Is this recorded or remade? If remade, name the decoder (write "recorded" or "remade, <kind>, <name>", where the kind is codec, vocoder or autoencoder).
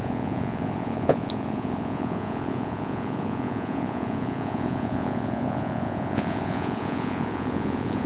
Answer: remade, vocoder, Vocos